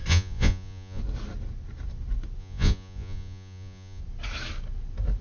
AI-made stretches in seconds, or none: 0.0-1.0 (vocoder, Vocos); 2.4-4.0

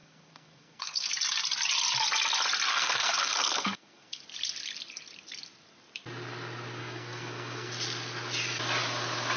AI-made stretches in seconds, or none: 0.0-1.1 (codec, SNAC); 2.7-4.2; 6.8-7.7

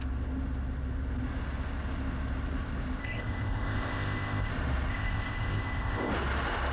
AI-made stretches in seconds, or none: 3.0-4.5 (codec, ZipCodec); 4.9-6.1